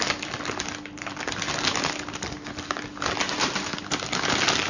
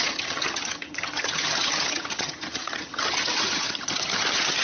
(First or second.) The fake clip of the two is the second